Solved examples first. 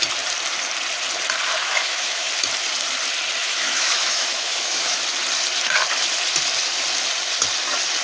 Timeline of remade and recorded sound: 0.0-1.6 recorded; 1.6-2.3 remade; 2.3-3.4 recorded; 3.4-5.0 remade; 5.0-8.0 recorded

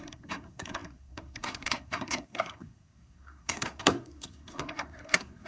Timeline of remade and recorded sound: 0.0-5.5 remade

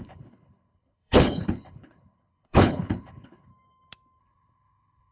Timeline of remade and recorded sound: 0.0-3.5 remade; 3.5-4.2 recorded; 4.2-5.1 remade